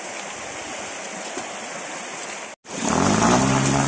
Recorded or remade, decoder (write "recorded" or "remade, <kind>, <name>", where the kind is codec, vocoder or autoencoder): recorded